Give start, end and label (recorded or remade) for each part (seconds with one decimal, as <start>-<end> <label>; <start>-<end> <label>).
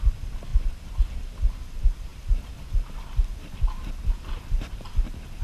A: 0.0-5.4 recorded